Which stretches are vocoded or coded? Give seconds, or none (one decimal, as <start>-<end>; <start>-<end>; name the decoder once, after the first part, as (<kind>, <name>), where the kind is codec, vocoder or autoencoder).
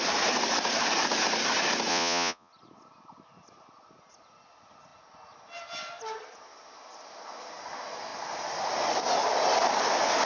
1.9-2.5 (vocoder, Vocos)